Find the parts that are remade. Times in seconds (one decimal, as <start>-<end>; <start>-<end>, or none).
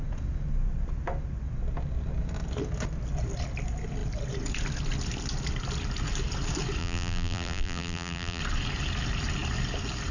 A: 6.8-8.4